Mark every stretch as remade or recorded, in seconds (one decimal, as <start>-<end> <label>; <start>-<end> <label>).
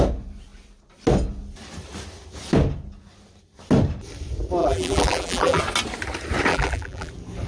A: 0.0-4.6 recorded; 4.6-5.6 remade; 5.6-6.5 recorded; 6.5-7.1 remade; 7.1-7.5 recorded